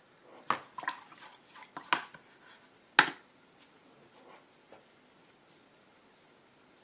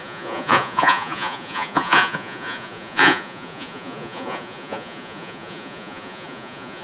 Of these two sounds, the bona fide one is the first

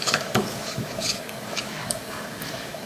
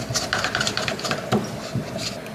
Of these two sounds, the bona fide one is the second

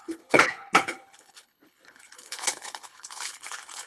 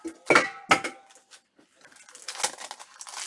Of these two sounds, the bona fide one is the second